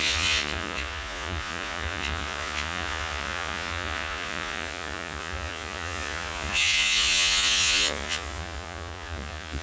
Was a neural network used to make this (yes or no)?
yes